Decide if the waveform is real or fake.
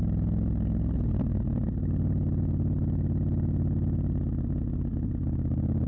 real